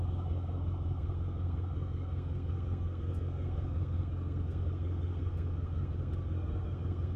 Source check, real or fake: fake